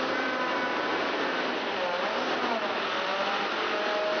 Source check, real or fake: real